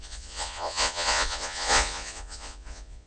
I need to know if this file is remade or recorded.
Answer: remade